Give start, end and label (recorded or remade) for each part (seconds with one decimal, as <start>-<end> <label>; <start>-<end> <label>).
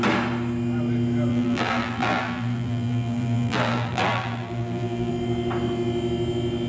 0.0-1.3 recorded; 1.3-5.1 remade; 5.1-6.7 recorded